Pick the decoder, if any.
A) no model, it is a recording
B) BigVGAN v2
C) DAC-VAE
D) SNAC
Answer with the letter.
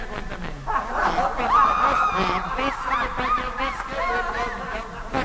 A